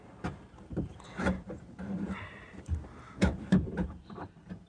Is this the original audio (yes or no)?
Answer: no